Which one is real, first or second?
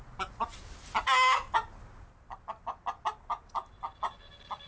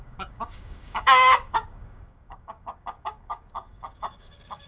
first